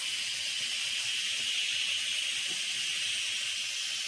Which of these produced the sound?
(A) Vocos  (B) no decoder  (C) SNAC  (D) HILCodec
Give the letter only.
B